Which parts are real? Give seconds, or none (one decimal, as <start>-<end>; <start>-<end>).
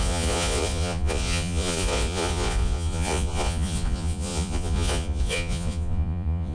none